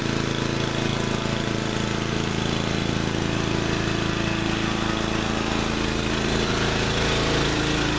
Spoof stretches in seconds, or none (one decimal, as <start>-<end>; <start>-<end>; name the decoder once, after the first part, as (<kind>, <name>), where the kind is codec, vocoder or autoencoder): none